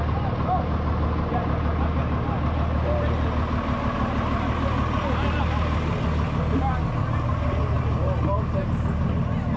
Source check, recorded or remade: recorded